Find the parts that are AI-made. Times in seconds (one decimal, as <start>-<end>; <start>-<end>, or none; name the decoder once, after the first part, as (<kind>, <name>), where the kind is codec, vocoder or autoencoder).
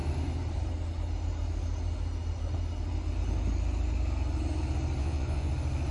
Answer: 5.0-5.5 (vocoder, Vocos)